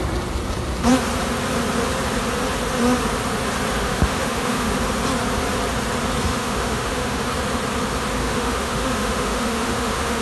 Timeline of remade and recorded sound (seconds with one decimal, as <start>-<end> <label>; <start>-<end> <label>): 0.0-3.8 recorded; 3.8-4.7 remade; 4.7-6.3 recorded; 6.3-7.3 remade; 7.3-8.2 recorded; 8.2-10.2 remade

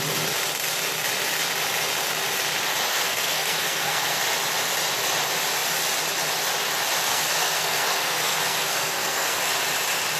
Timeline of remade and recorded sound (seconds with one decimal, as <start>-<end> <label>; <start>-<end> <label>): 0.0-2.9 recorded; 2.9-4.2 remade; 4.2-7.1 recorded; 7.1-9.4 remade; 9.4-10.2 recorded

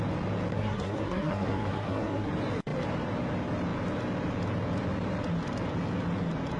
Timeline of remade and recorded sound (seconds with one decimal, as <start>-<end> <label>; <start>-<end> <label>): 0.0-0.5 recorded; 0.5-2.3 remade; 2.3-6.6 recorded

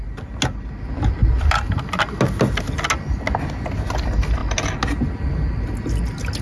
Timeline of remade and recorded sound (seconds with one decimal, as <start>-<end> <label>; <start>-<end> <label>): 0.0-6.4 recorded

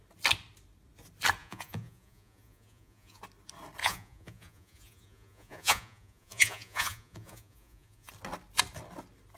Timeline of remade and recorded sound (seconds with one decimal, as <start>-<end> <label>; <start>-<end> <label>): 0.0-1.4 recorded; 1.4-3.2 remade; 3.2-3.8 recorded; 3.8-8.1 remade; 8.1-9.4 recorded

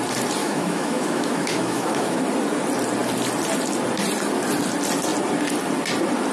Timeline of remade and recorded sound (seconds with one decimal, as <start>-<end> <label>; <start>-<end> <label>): 0.0-0.4 recorded; 0.4-2.2 remade; 2.2-6.3 recorded

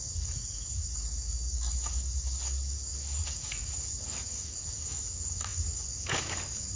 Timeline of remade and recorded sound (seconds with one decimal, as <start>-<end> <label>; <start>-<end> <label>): 0.0-6.8 remade